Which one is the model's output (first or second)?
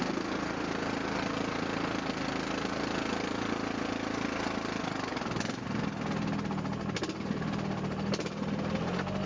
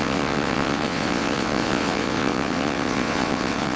second